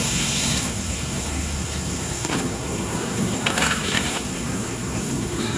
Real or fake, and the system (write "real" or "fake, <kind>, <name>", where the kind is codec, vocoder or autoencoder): fake, codec, SNAC